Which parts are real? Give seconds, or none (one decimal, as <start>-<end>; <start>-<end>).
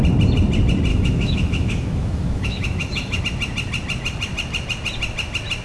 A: 0.0-0.9; 3.2-5.6